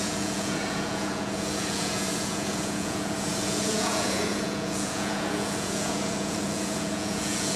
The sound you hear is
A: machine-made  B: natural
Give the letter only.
A